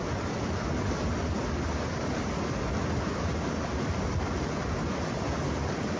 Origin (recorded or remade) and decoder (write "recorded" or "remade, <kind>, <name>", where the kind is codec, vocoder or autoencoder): recorded